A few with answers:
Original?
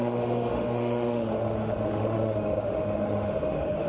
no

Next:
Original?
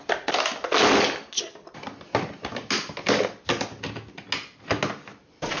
yes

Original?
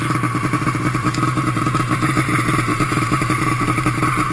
no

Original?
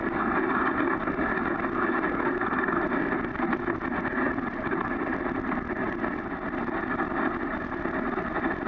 yes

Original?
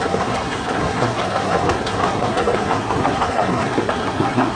no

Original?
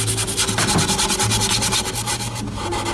yes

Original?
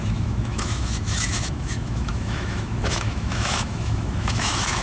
no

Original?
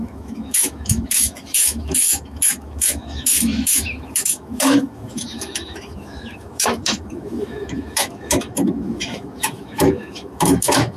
no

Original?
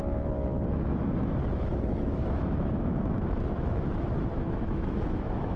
no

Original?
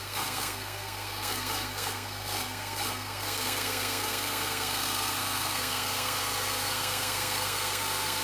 no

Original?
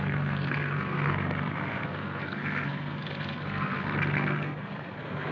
no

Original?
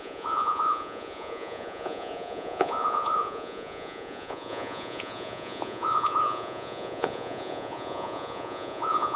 no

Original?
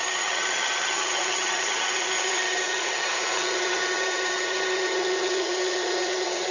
no